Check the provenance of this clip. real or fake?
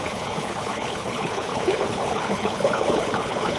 fake